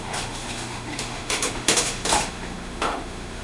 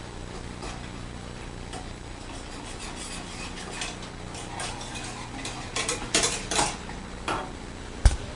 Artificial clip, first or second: first